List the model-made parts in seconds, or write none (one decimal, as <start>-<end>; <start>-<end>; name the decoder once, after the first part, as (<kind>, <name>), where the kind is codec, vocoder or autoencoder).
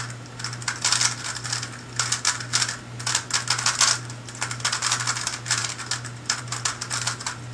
none